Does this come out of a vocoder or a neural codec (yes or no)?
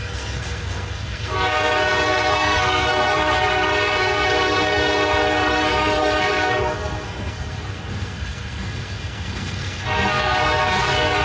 yes